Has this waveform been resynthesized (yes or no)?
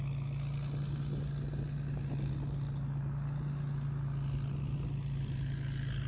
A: no